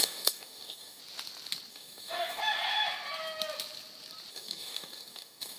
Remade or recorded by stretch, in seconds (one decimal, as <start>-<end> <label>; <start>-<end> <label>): 0.0-1.0 remade; 1.0-1.7 recorded; 1.7-2.4 remade; 2.4-4.3 recorded; 4.3-5.6 remade